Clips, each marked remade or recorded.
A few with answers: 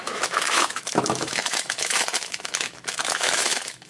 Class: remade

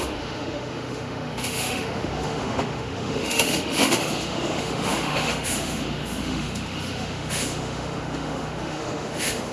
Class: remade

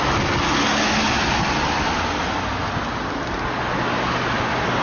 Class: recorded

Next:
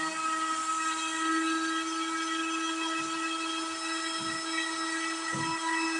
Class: recorded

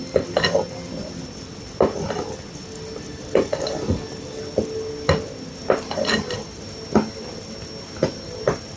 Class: recorded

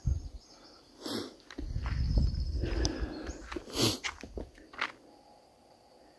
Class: recorded